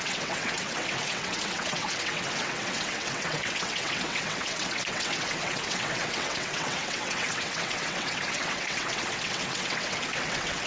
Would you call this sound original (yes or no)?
no